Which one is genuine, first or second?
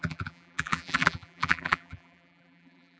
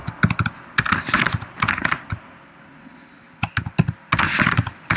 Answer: second